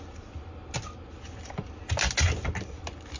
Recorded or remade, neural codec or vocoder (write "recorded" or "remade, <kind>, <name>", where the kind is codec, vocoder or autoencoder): recorded